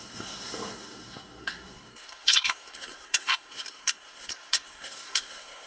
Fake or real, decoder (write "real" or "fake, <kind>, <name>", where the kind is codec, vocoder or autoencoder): fake, codec, SNAC